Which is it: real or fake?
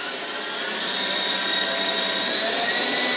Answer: real